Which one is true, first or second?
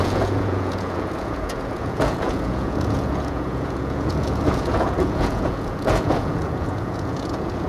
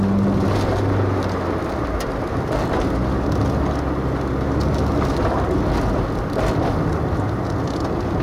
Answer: second